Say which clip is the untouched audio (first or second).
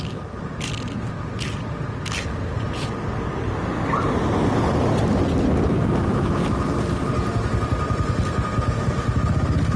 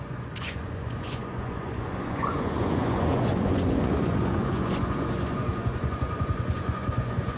first